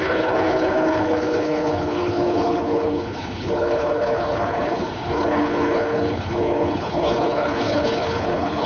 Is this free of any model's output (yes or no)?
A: no